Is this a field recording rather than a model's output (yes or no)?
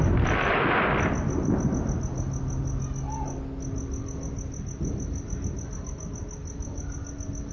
yes